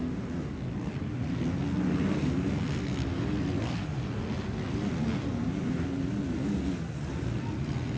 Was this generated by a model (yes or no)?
no